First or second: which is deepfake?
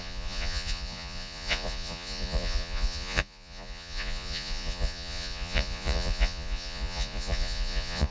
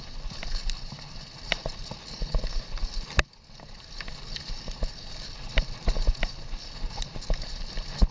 first